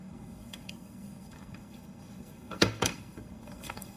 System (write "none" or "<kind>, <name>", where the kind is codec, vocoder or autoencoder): codec, SNAC